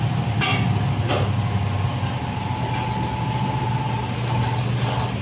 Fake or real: real